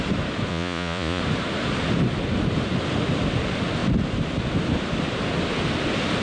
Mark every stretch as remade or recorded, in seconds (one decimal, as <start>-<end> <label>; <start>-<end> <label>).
0.0-0.5 recorded; 0.5-1.2 remade; 1.2-6.2 recorded